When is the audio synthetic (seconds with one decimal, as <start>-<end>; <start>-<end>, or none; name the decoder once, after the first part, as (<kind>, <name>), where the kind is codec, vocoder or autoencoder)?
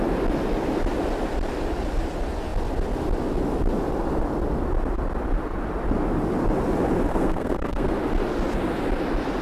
7.1-7.9 (codec, SNAC)